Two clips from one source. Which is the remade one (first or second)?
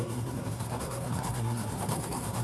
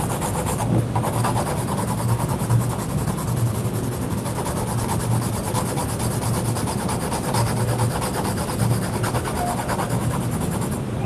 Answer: first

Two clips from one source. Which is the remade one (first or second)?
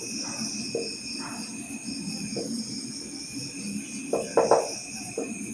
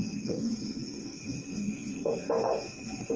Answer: second